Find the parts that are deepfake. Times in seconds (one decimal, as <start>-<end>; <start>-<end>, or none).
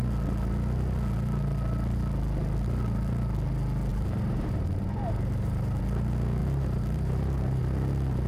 3.9-5.8; 6.4-7.6